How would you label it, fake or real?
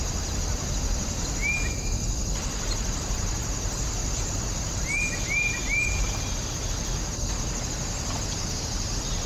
real